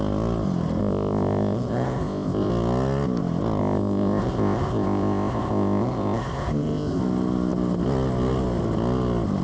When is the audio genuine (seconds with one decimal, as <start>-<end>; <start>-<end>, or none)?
0.0-0.8; 2.5-3.6; 7.0-9.4